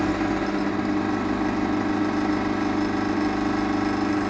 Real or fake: real